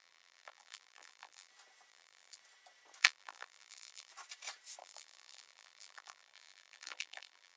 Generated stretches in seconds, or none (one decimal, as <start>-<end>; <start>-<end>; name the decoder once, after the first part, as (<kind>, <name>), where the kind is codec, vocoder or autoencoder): 0.0-1.5 (vocoder, BigVGAN v2); 1.9-2.4; 3.0-4.1; 4.8-7.6